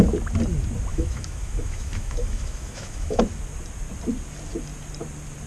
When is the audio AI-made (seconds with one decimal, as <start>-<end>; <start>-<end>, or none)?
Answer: 0.9-3.2